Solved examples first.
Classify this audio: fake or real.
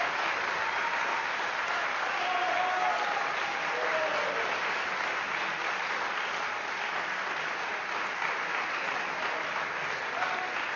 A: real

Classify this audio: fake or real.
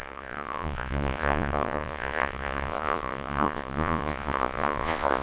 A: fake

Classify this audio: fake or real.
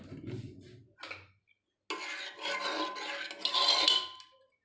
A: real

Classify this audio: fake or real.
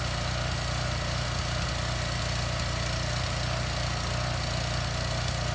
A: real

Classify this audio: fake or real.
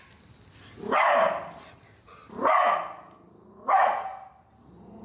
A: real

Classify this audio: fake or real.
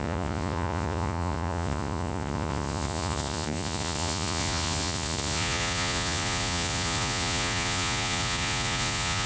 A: fake